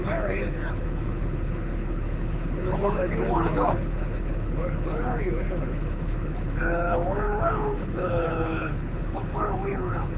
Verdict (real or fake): fake